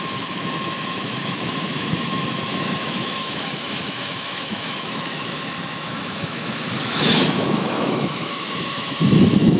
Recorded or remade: remade